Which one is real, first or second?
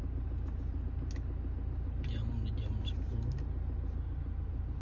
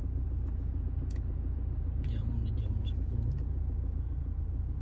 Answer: first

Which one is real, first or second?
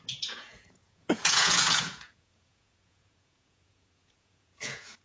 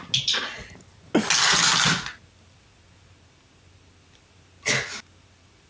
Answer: second